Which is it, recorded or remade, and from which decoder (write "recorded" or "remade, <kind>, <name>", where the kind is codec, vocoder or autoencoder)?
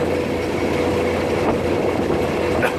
recorded